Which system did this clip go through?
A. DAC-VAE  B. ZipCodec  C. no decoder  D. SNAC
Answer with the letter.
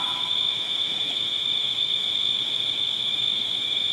A